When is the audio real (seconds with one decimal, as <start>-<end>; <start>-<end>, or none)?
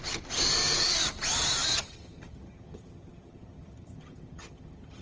0.0-1.7